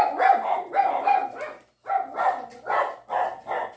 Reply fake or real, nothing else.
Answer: real